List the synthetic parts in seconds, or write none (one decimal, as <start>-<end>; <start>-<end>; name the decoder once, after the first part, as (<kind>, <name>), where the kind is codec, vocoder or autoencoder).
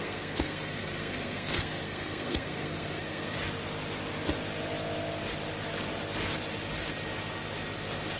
0.0-3.4 (codec, SNAC)